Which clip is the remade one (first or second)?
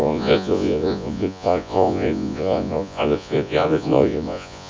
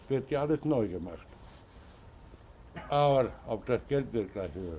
first